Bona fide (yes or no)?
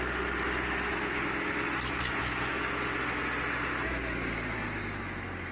yes